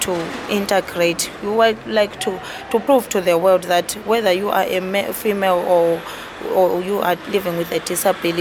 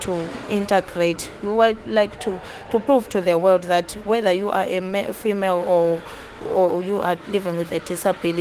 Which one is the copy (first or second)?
second